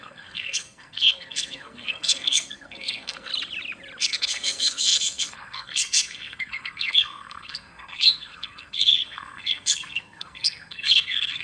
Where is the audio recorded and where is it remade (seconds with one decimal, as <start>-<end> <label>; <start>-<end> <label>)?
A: 0.0-3.3 remade; 3.3-4.0 recorded; 4.0-11.4 remade